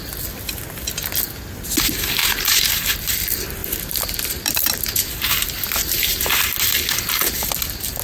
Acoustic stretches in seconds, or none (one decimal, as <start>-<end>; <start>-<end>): 0.0-2.2; 2.9-3.6; 5.1-8.0